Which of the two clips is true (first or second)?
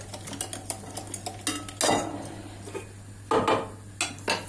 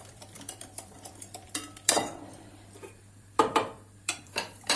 first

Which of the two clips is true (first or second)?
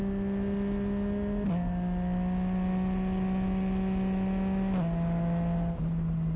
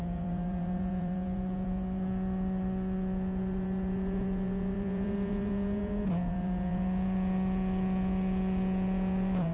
first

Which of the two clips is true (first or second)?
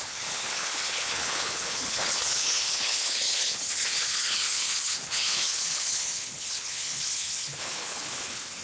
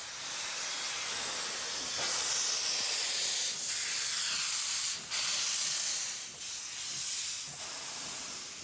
second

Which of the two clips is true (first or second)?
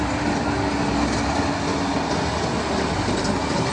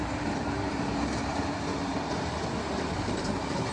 first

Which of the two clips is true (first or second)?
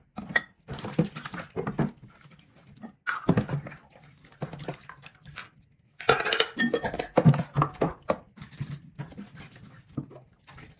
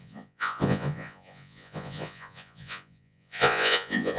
first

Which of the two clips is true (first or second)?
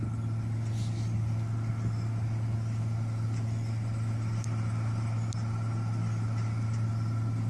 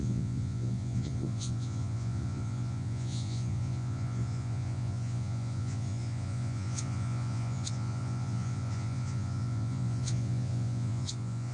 first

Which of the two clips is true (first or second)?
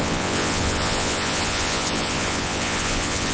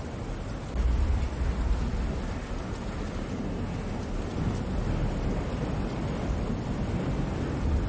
second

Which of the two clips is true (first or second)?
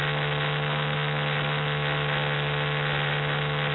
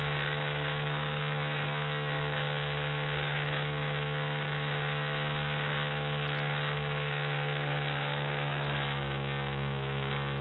first